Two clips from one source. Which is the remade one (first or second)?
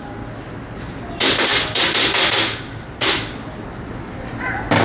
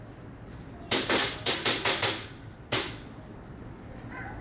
second